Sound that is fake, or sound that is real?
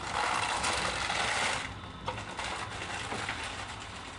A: real